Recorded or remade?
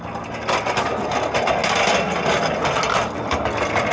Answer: recorded